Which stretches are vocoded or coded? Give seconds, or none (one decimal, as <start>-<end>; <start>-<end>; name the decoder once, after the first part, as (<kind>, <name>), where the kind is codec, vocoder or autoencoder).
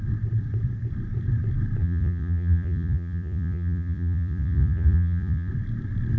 1.8-5.5 (vocoder, Vocos)